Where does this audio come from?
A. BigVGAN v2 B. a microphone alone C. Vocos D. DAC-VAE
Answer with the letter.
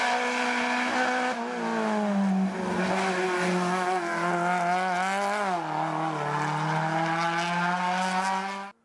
B